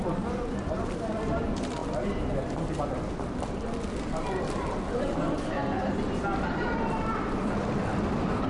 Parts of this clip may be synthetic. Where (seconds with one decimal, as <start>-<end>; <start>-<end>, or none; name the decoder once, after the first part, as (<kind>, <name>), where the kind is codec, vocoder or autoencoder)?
none